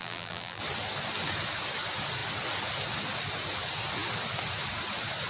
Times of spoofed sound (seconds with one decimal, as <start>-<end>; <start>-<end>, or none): 0.0-0.6